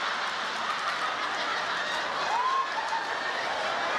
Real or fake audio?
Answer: real